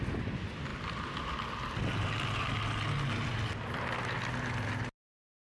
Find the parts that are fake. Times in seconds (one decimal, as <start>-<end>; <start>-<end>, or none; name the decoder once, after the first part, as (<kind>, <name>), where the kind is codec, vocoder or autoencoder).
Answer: none